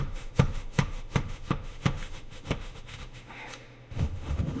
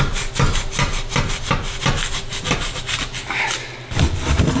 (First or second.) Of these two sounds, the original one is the second